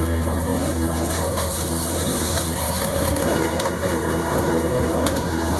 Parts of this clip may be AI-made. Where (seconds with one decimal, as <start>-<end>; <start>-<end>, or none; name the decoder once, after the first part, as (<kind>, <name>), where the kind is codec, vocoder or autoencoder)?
0.0-5.6 (codec, SNAC)